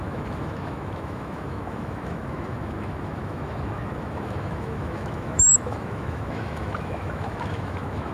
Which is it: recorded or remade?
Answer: remade